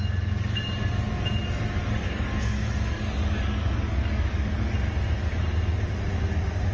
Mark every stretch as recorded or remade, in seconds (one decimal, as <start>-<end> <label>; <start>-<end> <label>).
0.0-1.8 recorded; 1.8-4.9 remade; 4.9-6.7 recorded